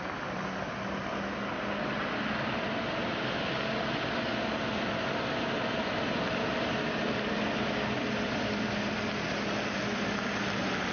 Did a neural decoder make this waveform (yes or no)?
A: no